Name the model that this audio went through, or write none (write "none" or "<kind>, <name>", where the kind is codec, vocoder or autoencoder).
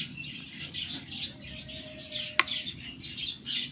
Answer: none